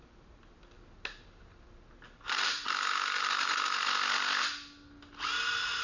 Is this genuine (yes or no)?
yes